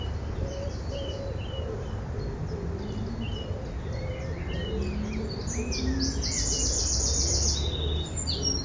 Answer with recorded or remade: recorded